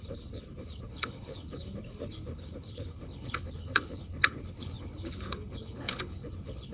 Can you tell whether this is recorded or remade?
remade